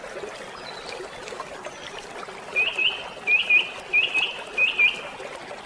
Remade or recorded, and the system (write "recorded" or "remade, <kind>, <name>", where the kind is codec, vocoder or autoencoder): recorded